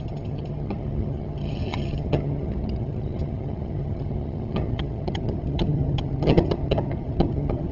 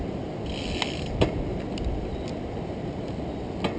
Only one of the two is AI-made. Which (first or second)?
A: first